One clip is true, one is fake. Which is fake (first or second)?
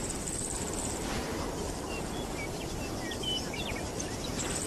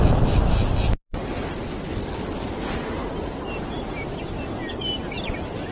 first